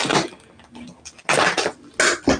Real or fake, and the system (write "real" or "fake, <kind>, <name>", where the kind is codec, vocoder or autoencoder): real